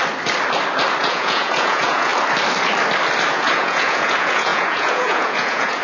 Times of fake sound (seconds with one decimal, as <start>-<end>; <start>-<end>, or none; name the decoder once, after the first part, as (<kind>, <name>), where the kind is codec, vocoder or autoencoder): 1.0-2.1 (vocoder, Vocos); 3.3-5.8